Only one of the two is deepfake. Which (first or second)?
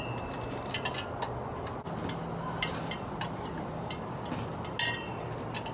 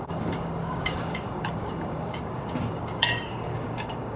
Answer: second